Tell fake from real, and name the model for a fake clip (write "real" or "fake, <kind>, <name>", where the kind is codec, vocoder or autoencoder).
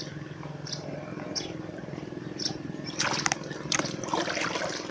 real